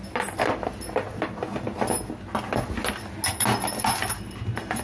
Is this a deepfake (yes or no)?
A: no